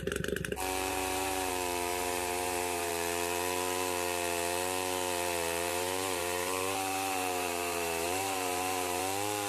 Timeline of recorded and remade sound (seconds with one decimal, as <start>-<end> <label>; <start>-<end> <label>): 0.0-0.9 recorded; 0.9-1.5 remade; 1.5-1.9 recorded; 1.9-2.9 remade; 2.9-5.7 recorded; 5.7-9.0 remade; 9.0-9.5 recorded